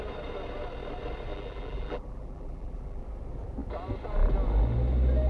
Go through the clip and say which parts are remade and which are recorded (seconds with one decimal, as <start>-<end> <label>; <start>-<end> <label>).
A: 0.0-1.3 recorded; 1.3-3.0 remade; 3.0-5.3 recorded